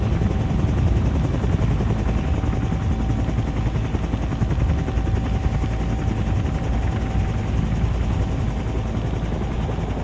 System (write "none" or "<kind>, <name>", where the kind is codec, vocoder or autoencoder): none